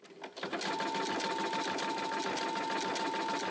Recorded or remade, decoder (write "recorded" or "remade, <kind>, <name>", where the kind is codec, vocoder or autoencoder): recorded